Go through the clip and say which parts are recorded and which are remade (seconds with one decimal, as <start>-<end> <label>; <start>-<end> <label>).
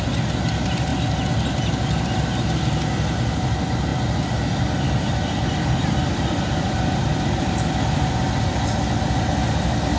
0.0-10.0 recorded